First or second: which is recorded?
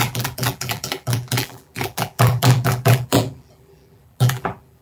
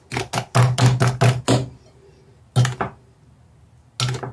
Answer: second